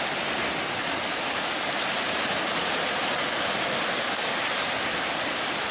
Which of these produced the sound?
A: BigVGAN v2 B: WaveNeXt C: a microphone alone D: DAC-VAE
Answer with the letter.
C